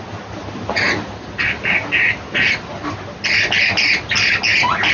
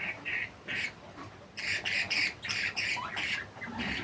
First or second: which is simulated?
second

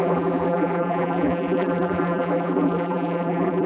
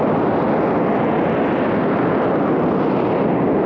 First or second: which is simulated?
first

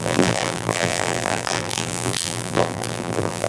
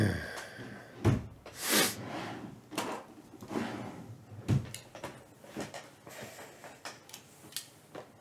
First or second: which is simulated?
first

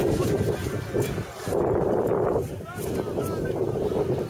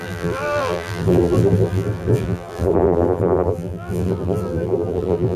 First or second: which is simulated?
second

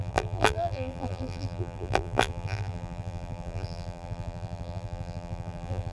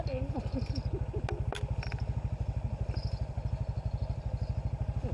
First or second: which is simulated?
first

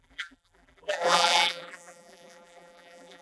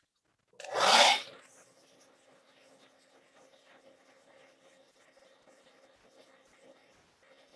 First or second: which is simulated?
first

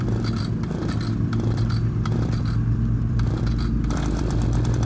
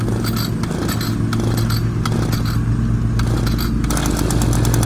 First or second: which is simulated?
first